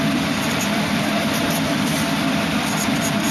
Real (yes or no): no